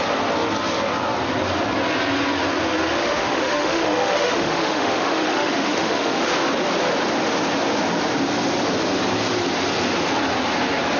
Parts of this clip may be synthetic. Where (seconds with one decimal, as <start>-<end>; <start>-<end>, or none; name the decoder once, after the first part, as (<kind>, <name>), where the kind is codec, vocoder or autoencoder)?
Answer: 3.0-6.3 (autoencoder, DAC-VAE)